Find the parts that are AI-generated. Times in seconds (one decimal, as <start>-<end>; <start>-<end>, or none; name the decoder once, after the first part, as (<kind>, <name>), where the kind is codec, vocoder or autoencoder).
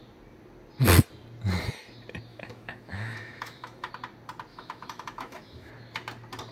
2.3-3.9 (autoencoder, DAC-VAE); 4.5-5.7